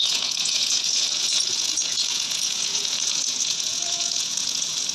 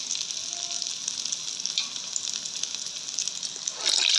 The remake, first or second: first